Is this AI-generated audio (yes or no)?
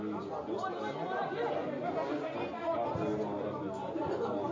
no